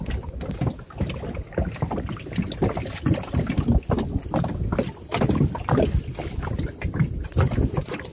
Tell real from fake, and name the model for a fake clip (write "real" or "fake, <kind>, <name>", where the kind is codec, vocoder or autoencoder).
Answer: real